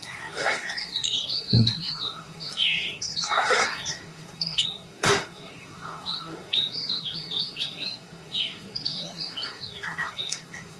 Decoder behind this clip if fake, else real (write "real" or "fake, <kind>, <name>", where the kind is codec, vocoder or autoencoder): fake, codec, SNAC